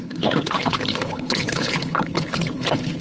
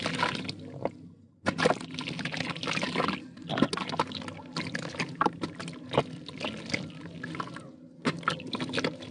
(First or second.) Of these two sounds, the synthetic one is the first